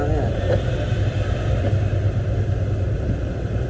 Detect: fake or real real